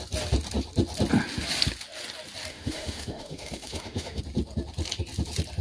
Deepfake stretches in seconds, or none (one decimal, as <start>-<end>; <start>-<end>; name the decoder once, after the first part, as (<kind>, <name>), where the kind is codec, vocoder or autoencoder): 2.5-4.2 (autoencoder, DAC-VAE)